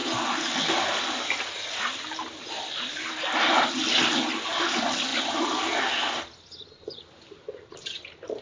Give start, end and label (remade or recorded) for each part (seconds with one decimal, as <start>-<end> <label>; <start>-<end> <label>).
0.0-8.4 recorded